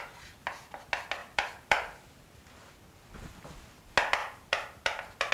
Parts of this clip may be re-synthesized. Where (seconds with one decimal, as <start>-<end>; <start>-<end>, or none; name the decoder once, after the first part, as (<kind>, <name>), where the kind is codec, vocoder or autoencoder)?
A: 1.2-2.8 (vocoder, BigVGAN v2); 4.2-5.3